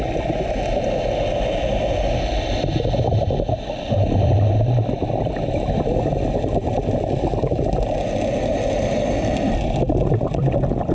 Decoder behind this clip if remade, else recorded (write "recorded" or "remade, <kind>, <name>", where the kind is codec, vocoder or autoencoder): recorded